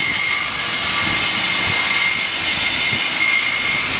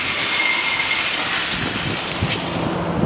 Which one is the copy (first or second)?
second